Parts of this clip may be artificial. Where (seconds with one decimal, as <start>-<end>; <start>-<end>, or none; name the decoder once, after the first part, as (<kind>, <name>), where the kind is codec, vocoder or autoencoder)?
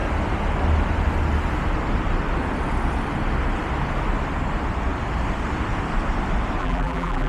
6.6-7.3 (vocoder, BigVGAN v2)